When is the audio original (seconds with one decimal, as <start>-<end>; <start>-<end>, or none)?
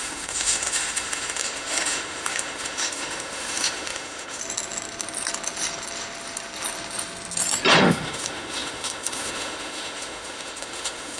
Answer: 4.4-7.8